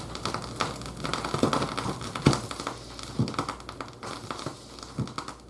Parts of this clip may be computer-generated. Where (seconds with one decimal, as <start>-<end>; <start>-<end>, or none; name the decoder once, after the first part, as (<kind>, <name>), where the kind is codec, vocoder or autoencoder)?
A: none